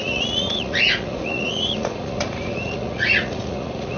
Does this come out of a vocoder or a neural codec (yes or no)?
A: yes